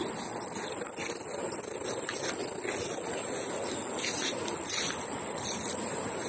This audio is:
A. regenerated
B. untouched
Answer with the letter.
B